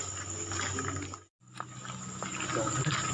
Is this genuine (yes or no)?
yes